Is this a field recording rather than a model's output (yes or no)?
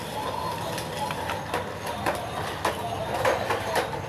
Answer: yes